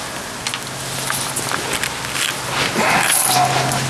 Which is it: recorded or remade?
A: recorded